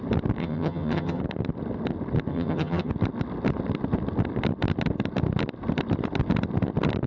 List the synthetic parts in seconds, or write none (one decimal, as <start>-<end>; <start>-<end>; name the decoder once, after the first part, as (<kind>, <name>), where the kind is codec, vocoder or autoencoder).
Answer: 0.4-1.2 (vocoder, HiFi-GAN); 2.3-2.9